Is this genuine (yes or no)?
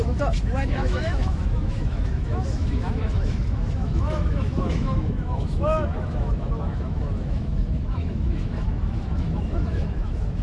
no